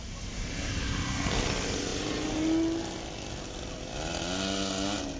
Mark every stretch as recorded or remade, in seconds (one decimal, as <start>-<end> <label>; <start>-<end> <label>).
0.0-5.2 recorded